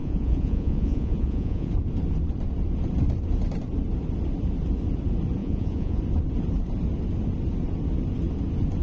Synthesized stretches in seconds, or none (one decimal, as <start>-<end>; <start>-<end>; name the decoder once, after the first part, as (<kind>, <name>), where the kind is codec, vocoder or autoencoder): 0.0-1.7 (vocoder, Vocos); 5.4-6.0